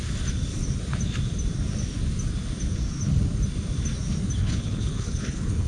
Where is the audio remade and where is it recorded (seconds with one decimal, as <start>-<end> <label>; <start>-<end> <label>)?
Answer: 0.0-4.4 recorded; 4.4-5.7 remade